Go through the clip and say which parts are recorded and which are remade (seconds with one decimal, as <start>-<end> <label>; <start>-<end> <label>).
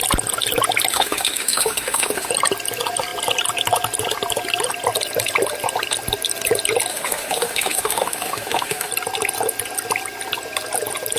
0.0-0.9 recorded; 0.9-2.3 remade; 2.3-6.9 recorded; 6.9-8.9 remade; 8.9-11.2 recorded